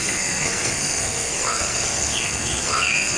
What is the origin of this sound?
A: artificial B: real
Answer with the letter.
A